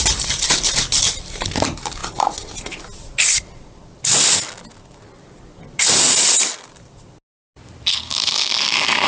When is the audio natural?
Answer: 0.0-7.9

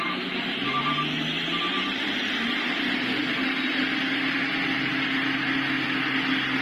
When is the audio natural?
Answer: 0.0-6.6

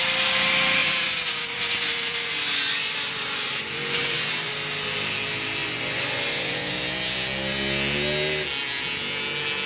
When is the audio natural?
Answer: 0.0-0.8; 4.5-5.6; 6.7-9.7